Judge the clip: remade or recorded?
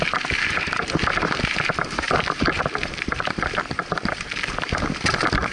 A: recorded